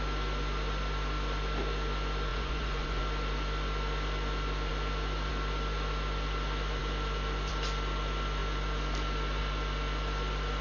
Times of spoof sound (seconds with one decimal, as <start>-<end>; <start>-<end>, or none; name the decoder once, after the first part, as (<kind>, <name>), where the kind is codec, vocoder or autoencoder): 2.3-3.0 (vocoder, Vocos)